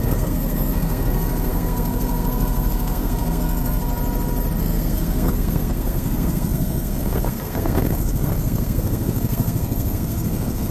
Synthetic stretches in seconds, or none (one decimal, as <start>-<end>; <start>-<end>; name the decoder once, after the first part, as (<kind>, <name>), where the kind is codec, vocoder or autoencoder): 0.0-3.8 (codec, SNAC); 4.6-10.7